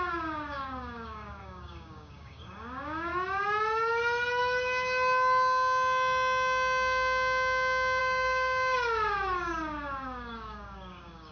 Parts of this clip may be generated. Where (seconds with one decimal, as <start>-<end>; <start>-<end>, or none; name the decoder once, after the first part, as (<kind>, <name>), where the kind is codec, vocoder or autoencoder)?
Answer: 0.0-3.1 (codec, DAC); 8.0-11.3